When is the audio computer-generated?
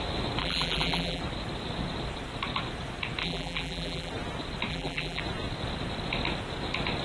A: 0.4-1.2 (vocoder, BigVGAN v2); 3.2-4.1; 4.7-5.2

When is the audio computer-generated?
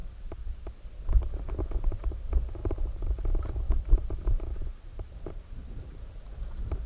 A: 2.6-6.0 (vocoder, BigVGAN v2)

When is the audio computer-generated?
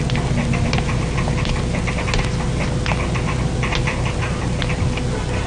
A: 3.9-4.4 (vocoder, BigVGAN v2)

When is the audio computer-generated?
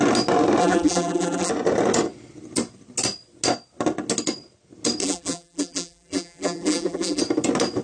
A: 0.6-1.5 (vocoder, BigVGAN v2); 5.0-7.2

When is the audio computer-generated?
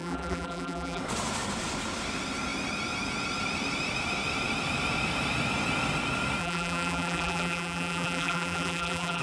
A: 0.0-1.0 (vocoder, BigVGAN v2); 6.4-9.2